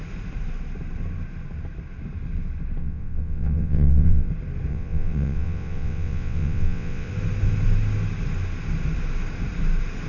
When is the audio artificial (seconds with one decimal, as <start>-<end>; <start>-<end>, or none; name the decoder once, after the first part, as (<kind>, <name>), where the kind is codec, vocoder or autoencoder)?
2.8-4.3 (vocoder, WaveNeXt); 4.7-7.1